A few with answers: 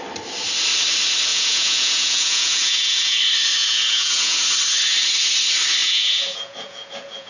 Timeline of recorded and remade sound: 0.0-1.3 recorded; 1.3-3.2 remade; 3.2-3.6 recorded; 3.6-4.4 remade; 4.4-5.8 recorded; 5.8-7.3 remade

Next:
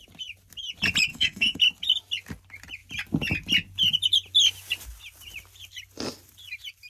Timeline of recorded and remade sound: 0.0-1.1 recorded; 1.1-1.6 remade; 1.6-6.9 recorded

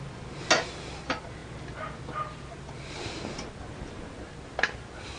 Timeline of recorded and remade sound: 0.0-5.2 recorded

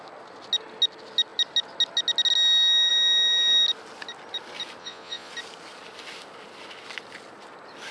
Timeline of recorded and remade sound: 0.0-4.8 recorded; 4.8-5.3 remade; 5.3-7.9 recorded

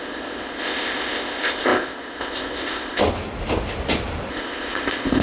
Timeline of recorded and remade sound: 0.0-3.0 remade; 3.0-4.3 recorded; 4.3-5.2 remade

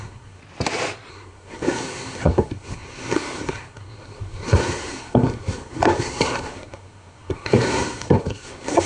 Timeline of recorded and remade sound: 0.0-0.4 remade; 0.4-1.1 recorded; 1.1-8.9 remade